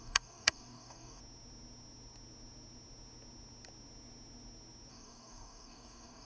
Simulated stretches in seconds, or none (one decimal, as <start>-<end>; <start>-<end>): 0.0-1.2; 4.9-6.2